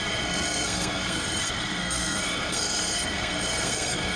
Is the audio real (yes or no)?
no